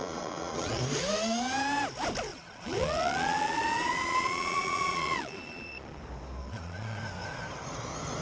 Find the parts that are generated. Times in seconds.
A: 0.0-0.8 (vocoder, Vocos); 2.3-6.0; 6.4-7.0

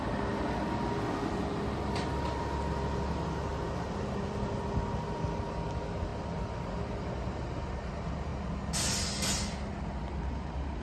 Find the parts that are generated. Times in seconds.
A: none

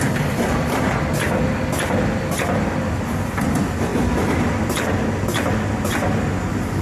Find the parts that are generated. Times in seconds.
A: none

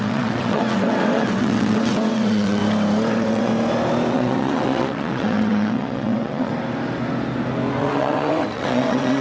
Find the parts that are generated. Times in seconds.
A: 0.0-2.6 (vocoder, WaveNeXt); 3.1-3.5; 4.1-6.5; 7.8-9.2

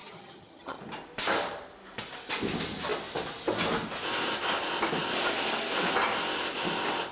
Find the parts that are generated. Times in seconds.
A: 0.0-0.8 (vocoder, HiFi-GAN)